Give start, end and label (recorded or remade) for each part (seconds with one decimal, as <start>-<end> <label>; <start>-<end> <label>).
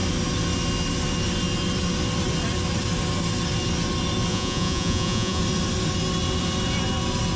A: 0.0-4.3 recorded; 4.3-5.4 remade; 5.4-7.4 recorded